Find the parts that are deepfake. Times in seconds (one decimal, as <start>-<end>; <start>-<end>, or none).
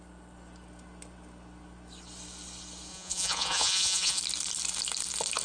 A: 2.9-4.2